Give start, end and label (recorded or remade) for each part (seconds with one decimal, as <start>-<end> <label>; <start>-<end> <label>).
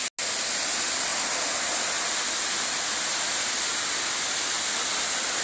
0.0-5.4 recorded